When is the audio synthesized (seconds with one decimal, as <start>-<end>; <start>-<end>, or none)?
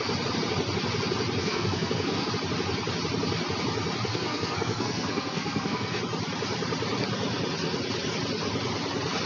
1.4-2.3; 4.1-6.0